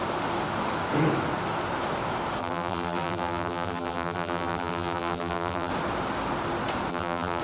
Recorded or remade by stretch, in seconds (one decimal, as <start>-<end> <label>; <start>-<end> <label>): 0.0-2.4 recorded; 2.4-5.7 remade; 5.7-6.9 recorded; 6.9-7.4 remade